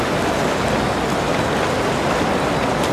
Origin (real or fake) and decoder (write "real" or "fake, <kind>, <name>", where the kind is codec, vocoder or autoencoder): real